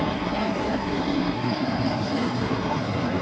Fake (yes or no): yes